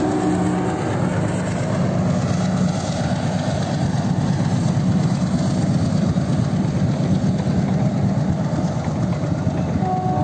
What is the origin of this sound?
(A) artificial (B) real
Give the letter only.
B